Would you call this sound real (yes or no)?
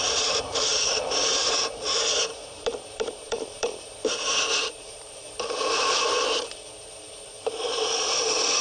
no